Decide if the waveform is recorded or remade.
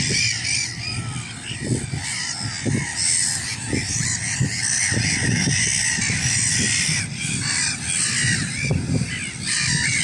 recorded